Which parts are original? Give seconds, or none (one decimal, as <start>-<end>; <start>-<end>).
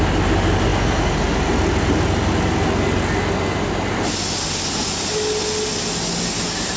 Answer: 0.0-6.8